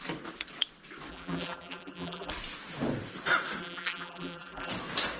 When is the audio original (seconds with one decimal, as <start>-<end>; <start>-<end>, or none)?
0.0-1.1; 2.3-3.6; 4.7-5.2